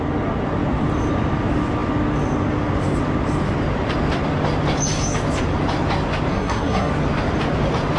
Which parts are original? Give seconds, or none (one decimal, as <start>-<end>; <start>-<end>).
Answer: 0.0-6.3; 6.9-8.0